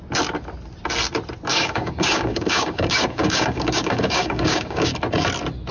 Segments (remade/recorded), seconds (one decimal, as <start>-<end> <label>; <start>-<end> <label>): 0.0-1.5 recorded; 1.5-4.9 remade; 4.9-5.7 recorded